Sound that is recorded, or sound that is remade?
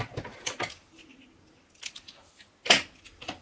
recorded